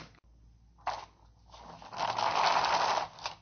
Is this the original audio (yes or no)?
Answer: yes